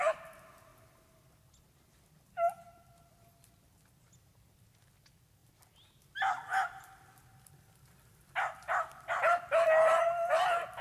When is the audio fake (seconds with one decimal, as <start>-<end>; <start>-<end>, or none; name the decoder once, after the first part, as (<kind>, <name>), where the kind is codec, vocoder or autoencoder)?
none